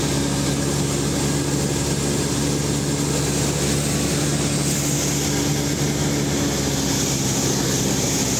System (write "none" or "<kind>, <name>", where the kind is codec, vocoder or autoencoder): none